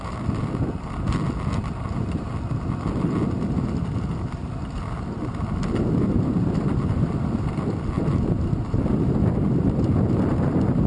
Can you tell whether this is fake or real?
real